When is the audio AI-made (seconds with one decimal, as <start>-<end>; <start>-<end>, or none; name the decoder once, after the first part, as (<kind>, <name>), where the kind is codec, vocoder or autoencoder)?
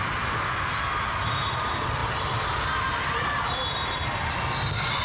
none